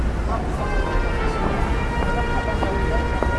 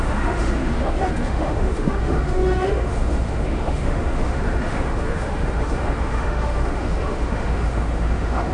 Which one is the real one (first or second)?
first